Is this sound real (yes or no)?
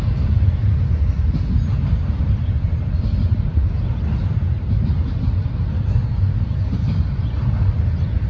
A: yes